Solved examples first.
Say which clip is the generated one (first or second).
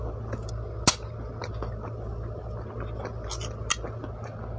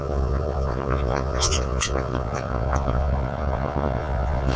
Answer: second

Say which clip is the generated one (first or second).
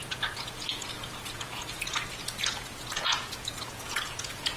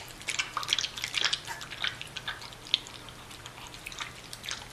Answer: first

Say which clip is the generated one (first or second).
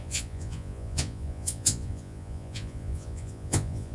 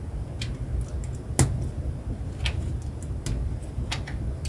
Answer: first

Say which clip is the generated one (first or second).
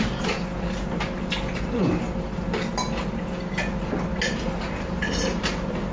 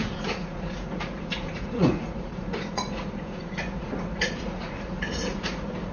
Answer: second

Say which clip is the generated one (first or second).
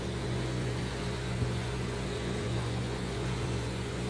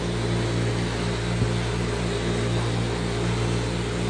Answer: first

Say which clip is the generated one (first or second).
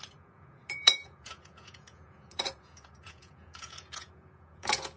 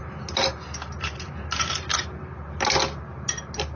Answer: first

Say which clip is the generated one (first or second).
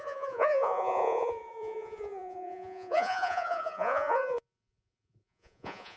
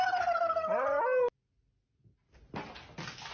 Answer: first